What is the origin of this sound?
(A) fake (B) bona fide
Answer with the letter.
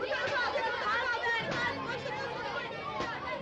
B